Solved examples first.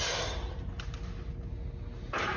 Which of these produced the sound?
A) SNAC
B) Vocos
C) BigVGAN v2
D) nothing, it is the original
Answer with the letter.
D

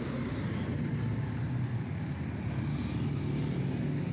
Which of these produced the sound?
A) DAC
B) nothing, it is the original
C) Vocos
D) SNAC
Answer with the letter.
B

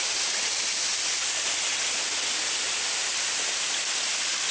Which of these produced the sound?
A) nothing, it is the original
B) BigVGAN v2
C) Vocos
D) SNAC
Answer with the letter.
A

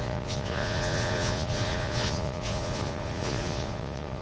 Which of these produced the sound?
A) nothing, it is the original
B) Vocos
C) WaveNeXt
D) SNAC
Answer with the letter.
B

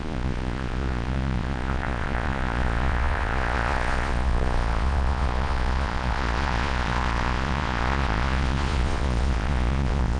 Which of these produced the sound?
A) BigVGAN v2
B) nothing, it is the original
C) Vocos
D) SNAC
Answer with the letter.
C